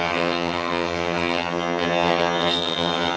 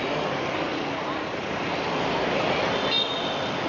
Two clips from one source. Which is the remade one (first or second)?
first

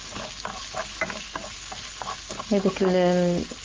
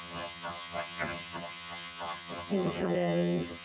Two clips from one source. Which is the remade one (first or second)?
second